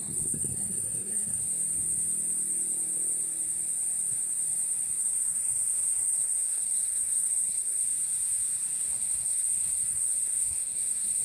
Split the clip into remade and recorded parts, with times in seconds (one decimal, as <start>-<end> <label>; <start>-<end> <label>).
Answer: 0.0-1.4 remade; 1.4-5.0 recorded; 5.0-7.9 remade; 7.9-8.9 recorded; 8.9-11.2 remade